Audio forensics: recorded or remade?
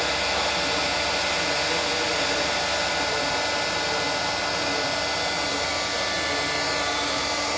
recorded